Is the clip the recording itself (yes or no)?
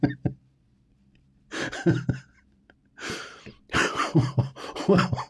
no